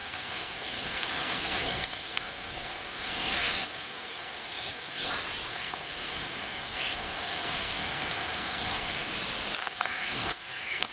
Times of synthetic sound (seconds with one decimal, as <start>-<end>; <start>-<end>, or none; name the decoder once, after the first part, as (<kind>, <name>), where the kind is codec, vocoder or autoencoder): 0.0-5.1 (codec, SNAC); 5.5-9.1; 9.6-10.9